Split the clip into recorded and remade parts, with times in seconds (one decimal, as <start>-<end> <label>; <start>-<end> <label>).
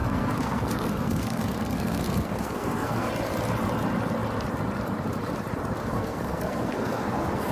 0.0-3.1 remade; 3.1-5.8 recorded; 5.8-7.5 remade